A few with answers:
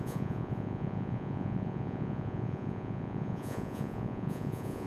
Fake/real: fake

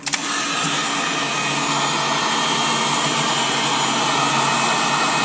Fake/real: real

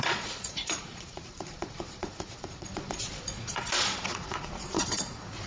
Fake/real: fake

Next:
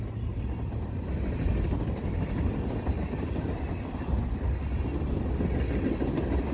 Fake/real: real